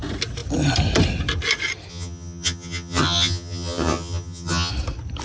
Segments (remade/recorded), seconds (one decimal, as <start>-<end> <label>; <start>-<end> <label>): 0.0-1.9 recorded; 1.9-4.7 remade; 4.7-5.2 recorded